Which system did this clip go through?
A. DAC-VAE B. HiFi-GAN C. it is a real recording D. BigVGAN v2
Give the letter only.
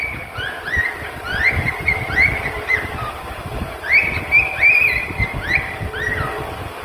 D